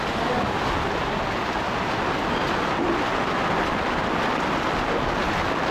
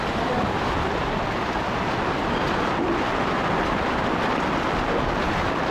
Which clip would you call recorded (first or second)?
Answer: first